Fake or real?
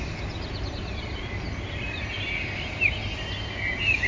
real